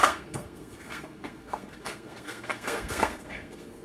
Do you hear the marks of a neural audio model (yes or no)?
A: yes